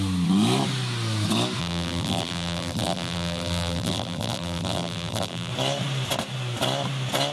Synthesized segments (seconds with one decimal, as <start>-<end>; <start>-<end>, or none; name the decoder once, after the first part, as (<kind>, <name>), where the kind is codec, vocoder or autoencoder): 1.6-5.5 (vocoder, BigVGAN v2)